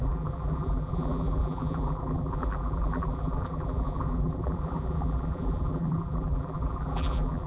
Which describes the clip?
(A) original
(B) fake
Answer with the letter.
B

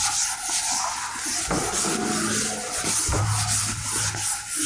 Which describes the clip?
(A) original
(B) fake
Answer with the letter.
A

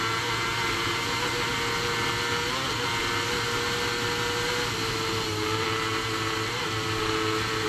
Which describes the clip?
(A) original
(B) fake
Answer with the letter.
A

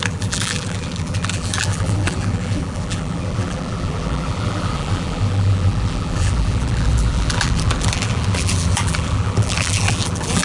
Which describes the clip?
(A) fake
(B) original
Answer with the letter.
A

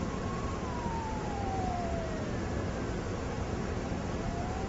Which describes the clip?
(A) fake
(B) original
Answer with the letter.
A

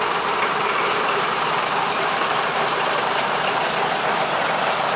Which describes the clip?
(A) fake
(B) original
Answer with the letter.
A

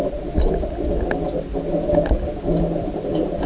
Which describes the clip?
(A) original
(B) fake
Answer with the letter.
A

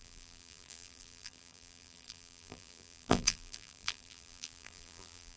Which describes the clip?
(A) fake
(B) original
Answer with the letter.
A